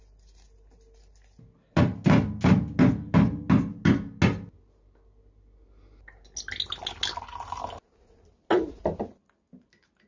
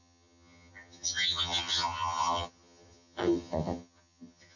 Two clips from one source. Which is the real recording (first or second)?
first